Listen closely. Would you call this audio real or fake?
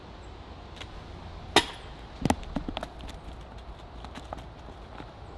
real